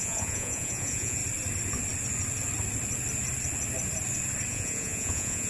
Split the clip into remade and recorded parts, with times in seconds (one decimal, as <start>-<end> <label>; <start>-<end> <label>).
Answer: 0.0-1.2 remade; 1.2-4.5 recorded; 4.5-5.5 remade